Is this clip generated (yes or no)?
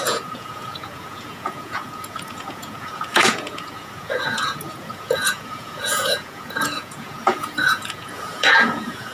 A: yes